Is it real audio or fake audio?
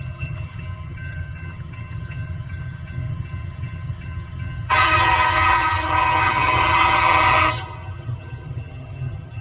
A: fake